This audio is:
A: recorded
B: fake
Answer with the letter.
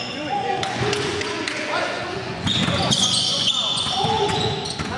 B